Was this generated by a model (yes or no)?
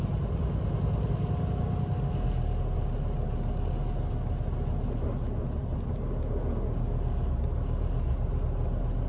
no